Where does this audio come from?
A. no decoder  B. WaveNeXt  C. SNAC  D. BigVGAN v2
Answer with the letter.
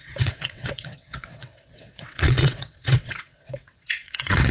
B